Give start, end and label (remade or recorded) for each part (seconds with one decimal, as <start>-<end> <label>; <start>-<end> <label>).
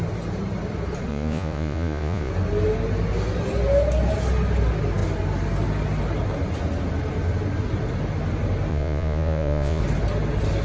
0.0-1.1 recorded; 1.1-2.3 remade; 2.3-8.7 recorded; 8.7-9.8 remade; 9.8-10.6 recorded